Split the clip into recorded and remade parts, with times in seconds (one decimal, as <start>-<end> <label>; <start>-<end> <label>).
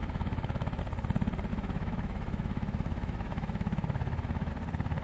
0.0-0.8 remade; 0.8-1.5 recorded; 1.5-4.5 remade; 4.5-5.0 recorded